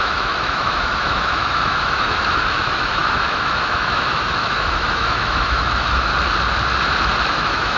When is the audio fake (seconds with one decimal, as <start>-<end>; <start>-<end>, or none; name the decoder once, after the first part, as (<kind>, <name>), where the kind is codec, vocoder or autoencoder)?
0.0-6.1 (autoencoder, DAC-VAE); 7.3-7.8